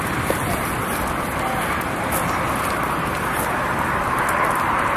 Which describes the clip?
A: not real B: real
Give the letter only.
B